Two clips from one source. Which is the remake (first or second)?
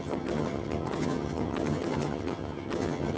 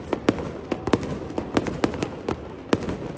first